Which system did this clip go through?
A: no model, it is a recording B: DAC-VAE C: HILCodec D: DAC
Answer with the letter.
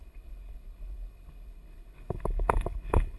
C